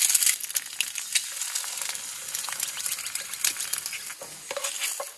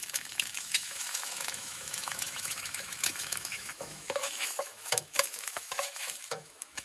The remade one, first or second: second